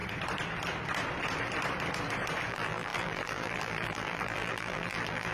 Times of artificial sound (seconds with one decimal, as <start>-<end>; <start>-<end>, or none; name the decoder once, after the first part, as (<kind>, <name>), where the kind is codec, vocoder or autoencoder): 2.5-5.3 (vocoder, BigVGAN v2)